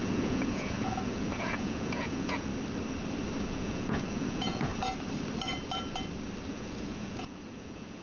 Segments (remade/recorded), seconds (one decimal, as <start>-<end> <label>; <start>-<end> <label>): 0.0-2.5 remade; 2.5-3.4 recorded; 3.4-4.7 remade; 4.7-6.5 recorded; 6.5-8.0 remade

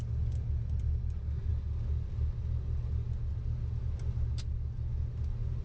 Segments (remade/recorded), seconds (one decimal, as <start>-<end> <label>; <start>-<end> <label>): 0.0-5.6 recorded

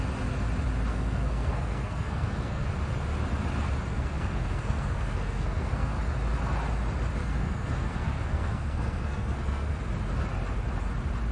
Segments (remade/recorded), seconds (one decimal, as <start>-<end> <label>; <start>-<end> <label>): 0.0-0.9 recorded; 0.9-2.7 remade; 2.7-3.9 recorded; 3.9-6.0 remade; 6.0-7.2 recorded; 7.2-9.8 remade; 9.8-11.3 recorded

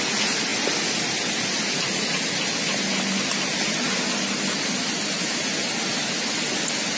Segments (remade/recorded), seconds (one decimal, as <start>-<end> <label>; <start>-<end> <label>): 0.0-7.0 recorded

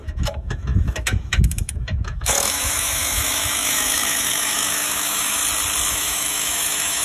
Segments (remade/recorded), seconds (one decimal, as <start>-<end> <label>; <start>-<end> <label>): 0.0-5.4 remade; 5.4-5.9 recorded; 5.9-7.0 remade

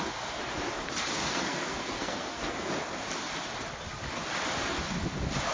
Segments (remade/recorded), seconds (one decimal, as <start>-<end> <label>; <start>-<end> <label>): 0.0-1.2 recorded; 1.2-2.7 remade; 2.7-5.5 recorded